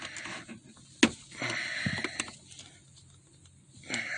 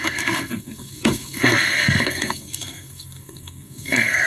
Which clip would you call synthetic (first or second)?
second